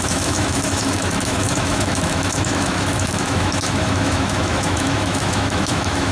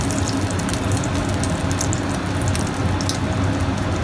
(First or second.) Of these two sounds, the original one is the second